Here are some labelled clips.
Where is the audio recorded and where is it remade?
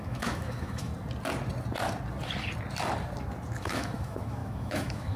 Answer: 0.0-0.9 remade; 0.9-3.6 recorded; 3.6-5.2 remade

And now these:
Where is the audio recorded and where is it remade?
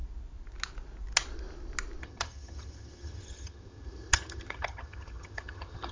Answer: 0.0-2.0 recorded; 2.0-5.9 remade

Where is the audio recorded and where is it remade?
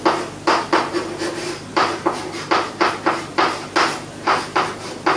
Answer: 0.0-5.2 recorded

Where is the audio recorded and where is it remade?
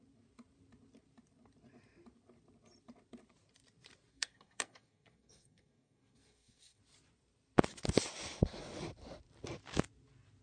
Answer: 0.0-4.1 recorded; 4.1-6.8 remade; 6.8-10.4 recorded